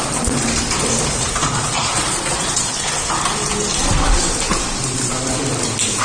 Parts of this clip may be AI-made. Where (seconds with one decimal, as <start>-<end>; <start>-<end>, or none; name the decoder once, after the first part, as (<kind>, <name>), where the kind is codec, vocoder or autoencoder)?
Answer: 1.4-2.7 (vocoder, Vocos)

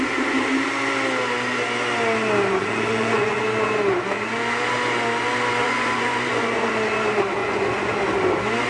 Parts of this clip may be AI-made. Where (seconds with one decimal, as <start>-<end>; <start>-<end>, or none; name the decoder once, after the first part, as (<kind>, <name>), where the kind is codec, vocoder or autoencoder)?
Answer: 2.6-3.4 (vocoder, Vocos); 5.6-6.7; 7.4-7.9

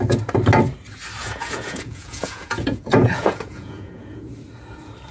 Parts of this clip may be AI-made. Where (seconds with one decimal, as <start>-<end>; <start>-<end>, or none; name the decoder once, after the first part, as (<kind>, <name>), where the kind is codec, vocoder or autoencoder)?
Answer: 1.2-4.3 (vocoder, Vocos)

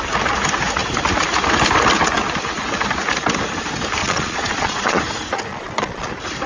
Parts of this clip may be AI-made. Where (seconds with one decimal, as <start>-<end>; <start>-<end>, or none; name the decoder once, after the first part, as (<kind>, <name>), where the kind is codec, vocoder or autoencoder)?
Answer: 4.0-5.0 (vocoder, Vocos); 5.5-6.1

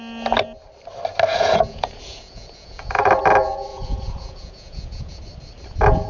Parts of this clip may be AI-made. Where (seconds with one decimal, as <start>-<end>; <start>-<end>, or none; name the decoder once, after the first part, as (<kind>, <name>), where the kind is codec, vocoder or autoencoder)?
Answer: 1.3-3.1 (vocoder, Vocos); 3.7-5.2

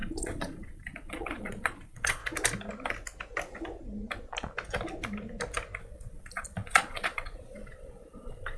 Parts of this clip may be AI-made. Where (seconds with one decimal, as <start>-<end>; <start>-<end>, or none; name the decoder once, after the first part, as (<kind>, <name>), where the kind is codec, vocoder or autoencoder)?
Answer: 0.0-2.2 (vocoder, Vocos); 5.8-8.6

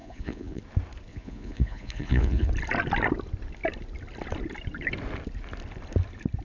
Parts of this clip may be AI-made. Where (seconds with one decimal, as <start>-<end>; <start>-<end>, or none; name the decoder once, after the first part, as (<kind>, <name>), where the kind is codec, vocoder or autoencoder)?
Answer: 0.0-0.6 (vocoder, Vocos); 1.1-2.5

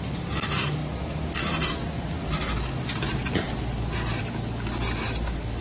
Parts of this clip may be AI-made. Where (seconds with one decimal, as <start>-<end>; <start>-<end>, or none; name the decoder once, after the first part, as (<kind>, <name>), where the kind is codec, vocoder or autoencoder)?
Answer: none